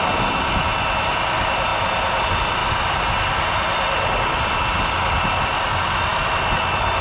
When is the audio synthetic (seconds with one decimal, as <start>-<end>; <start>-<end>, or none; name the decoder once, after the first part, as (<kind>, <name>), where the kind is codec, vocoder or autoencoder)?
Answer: none